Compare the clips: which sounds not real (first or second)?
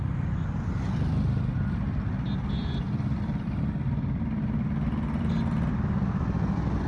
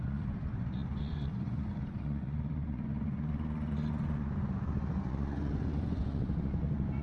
second